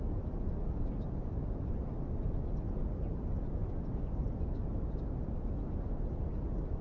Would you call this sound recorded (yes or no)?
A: yes